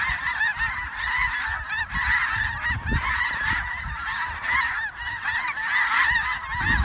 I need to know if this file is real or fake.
real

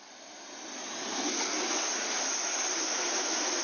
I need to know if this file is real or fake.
real